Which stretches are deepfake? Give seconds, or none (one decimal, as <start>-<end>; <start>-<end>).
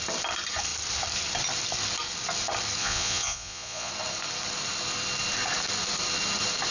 2.8-3.9